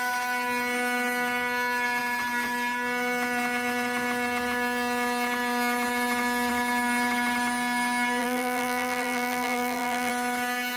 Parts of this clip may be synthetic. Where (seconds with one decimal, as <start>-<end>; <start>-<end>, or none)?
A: 8.2-10.1